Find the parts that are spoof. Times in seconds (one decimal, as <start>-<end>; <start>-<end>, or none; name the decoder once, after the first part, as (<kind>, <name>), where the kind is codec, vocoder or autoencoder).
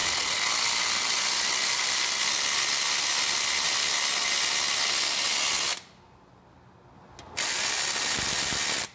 none